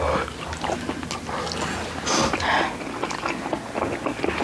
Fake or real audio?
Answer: real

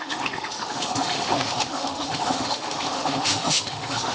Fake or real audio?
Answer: fake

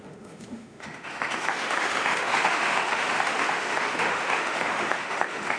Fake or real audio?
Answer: fake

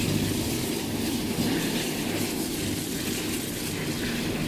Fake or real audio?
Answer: real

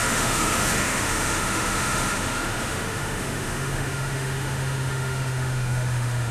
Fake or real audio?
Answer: fake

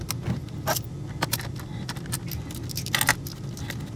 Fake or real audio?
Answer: real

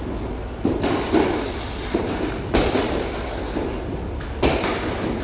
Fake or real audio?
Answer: real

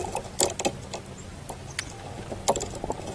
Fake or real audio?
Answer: real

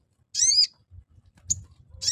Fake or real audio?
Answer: real